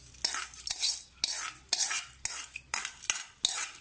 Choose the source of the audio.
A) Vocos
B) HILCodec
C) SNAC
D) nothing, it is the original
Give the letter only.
D